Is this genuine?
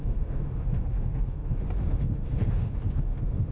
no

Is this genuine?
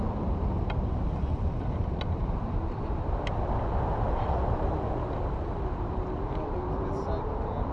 yes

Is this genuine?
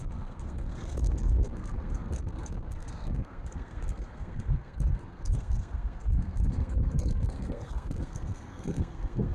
no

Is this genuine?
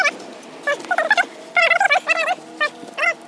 yes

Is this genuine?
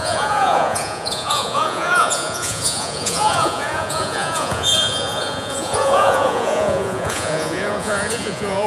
no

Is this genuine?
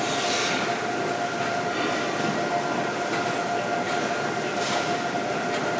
yes